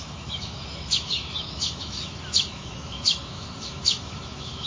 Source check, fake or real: fake